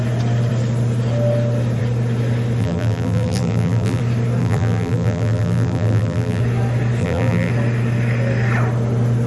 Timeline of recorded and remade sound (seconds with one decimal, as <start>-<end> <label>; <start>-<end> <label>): 0.0-2.6 recorded; 2.6-4.0 remade; 4.0-4.4 recorded; 4.4-6.4 remade; 6.4-7.0 recorded; 7.0-7.5 remade; 7.5-9.3 recorded